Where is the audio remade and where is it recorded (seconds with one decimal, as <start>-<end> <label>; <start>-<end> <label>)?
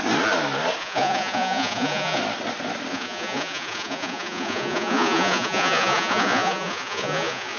0.0-0.8 recorded; 0.8-2.2 remade; 2.2-2.9 recorded; 2.9-7.6 remade